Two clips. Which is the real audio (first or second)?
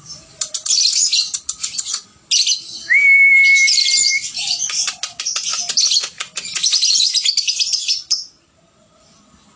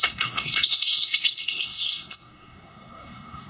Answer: first